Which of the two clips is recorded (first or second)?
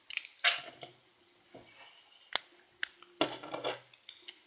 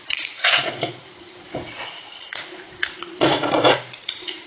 first